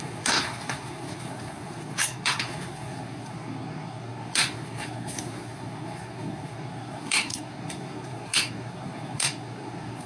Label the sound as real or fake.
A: fake